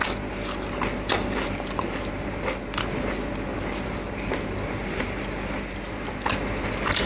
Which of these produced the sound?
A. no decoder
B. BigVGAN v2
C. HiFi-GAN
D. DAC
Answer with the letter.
A